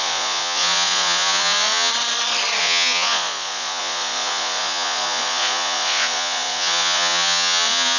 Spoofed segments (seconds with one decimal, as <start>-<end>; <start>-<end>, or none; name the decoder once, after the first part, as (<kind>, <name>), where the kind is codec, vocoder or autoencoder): 0.0-1.9 (vocoder, Vocos); 2.6-8.0